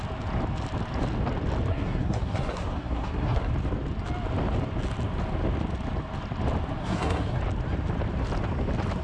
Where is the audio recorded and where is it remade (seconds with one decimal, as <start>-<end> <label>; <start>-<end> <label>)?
0.0-1.7 recorded; 1.7-3.5 remade; 3.5-6.8 recorded; 6.8-7.4 remade; 7.4-9.0 recorded